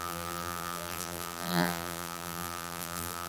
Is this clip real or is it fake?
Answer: fake